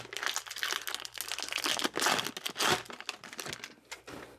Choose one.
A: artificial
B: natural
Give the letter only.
B